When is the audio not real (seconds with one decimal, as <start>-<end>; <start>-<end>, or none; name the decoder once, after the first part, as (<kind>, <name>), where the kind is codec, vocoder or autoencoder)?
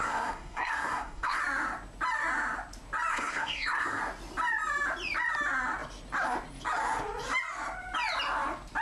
0.0-1.4 (codec, SNAC); 3.1-4.0